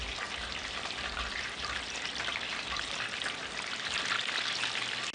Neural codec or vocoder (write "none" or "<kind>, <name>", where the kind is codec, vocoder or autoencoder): none